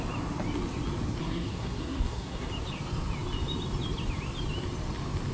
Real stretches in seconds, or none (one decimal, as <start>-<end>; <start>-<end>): 0.0-1.2; 2.5-5.3